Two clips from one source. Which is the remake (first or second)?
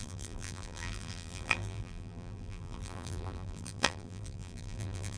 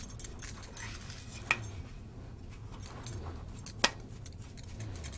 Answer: first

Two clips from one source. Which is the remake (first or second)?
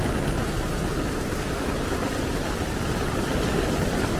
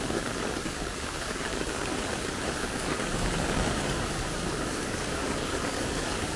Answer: second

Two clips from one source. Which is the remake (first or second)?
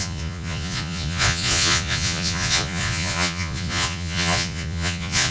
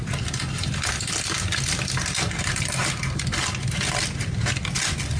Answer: first